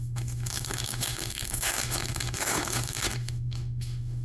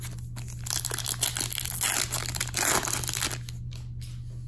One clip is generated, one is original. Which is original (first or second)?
second